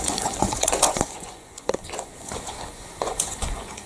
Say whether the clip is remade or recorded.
remade